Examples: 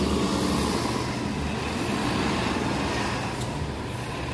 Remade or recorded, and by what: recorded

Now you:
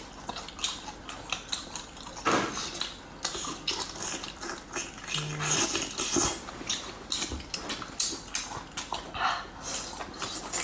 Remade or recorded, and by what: recorded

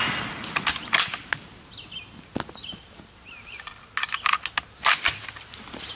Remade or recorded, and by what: recorded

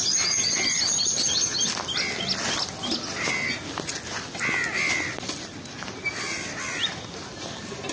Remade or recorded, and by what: recorded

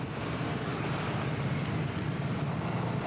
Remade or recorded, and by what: recorded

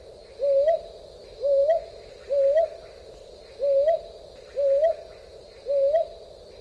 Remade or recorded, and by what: recorded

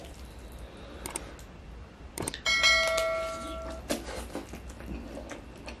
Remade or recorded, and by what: recorded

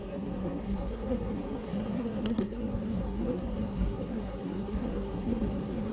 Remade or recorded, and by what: remade, codec, SNAC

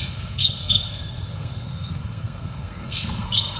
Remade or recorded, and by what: remade, codec, SNAC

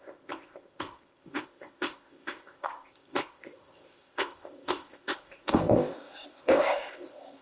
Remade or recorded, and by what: remade, codec, ZipCodec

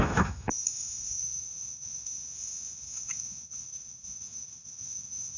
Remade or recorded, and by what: remade, autoencoder, DAC-VAE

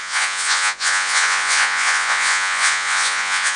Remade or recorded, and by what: remade, vocoder, Vocos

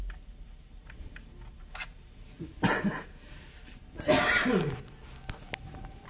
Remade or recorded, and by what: recorded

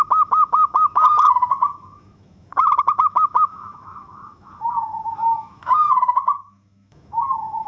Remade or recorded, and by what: remade, autoencoder, DAC-VAE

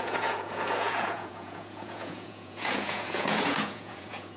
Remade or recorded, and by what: remade, vocoder, Vocos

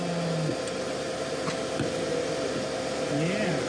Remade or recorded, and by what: recorded